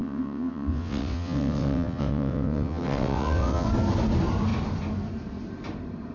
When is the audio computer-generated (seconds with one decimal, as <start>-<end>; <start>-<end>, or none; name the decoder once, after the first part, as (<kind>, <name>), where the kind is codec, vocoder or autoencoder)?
0.0-3.7 (vocoder, WaveNeXt)